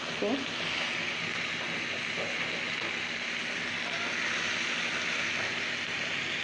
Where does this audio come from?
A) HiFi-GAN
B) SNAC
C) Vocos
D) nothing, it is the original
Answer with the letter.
D